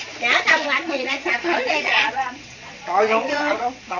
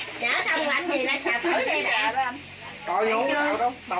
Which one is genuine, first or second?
second